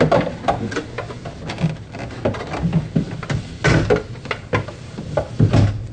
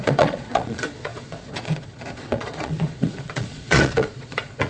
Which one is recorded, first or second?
first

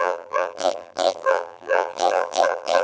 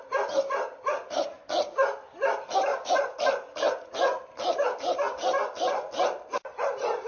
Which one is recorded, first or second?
second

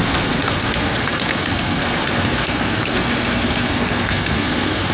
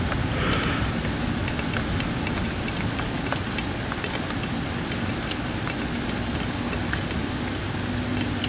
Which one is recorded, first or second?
second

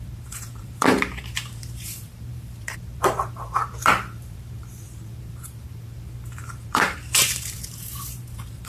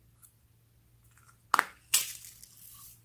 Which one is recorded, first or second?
second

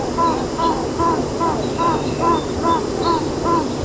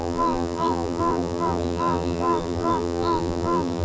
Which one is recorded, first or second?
first